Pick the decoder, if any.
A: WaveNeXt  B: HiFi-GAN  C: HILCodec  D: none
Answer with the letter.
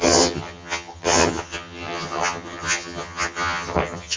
B